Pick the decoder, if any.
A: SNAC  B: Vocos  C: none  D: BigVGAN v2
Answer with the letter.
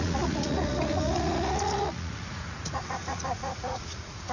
B